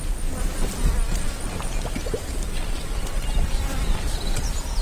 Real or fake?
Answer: real